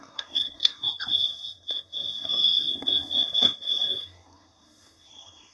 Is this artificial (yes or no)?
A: yes